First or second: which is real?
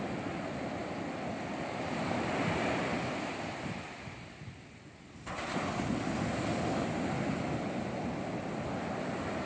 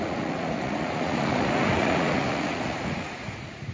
first